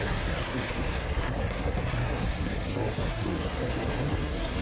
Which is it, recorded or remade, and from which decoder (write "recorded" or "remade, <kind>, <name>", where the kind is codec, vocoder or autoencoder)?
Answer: remade, codec, SNAC